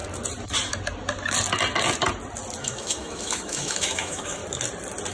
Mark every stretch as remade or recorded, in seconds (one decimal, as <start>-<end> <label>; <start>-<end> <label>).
0.0-2.6 recorded; 2.6-4.4 remade; 4.4-5.1 recorded